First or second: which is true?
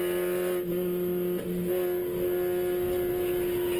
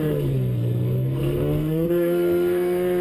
first